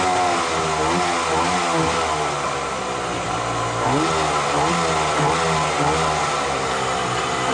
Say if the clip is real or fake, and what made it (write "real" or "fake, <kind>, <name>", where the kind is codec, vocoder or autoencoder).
real